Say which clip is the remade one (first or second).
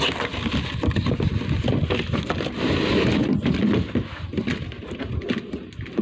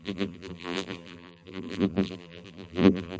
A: second